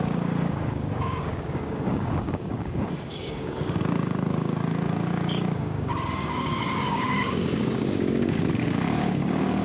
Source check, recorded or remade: remade